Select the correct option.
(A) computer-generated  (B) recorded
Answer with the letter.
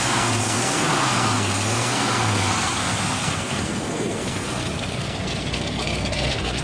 A